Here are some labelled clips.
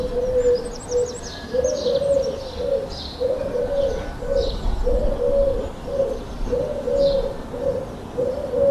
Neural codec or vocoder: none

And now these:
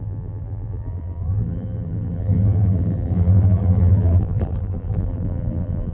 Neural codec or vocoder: vocoder, BigVGAN v2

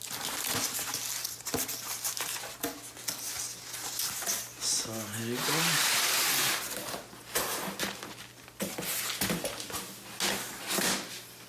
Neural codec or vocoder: none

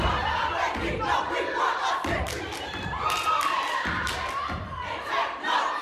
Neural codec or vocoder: none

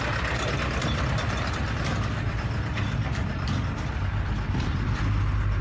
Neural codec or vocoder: vocoder, BigVGAN v2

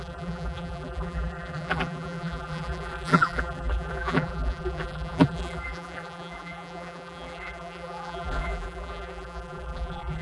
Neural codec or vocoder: vocoder, BigVGAN v2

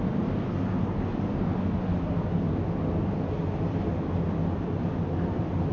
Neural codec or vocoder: none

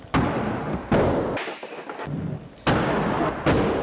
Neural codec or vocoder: none